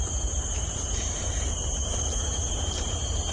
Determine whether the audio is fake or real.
fake